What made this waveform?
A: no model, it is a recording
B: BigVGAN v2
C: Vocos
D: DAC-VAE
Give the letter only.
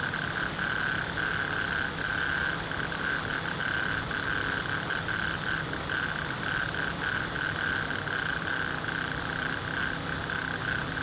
B